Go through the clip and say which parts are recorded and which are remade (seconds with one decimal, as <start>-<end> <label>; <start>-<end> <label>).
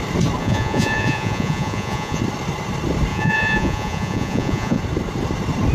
0.0-0.4 recorded; 0.4-2.2 remade; 2.2-3.1 recorded; 3.1-4.8 remade; 4.8-5.7 recorded